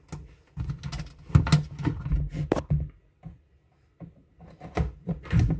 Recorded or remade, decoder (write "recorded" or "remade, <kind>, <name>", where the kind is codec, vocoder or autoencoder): recorded